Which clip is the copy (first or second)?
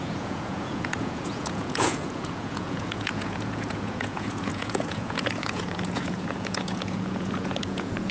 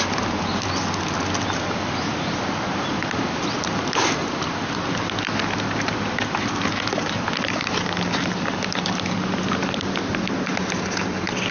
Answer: first